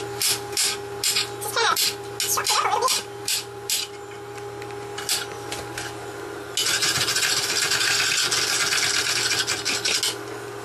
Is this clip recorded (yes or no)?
yes